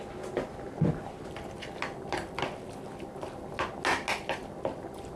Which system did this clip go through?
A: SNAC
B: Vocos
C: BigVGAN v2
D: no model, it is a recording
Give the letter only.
D